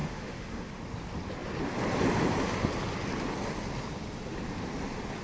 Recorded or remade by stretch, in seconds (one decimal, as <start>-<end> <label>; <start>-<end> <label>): 0.0-0.8 remade; 0.8-5.2 recorded